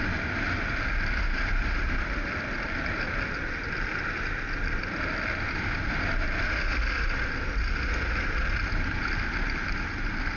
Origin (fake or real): real